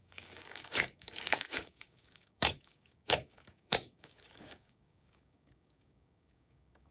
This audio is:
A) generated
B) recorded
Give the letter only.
A